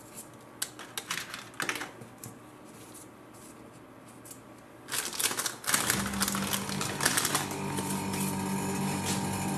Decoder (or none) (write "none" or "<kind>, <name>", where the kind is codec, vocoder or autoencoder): none